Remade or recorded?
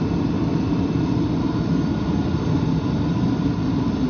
recorded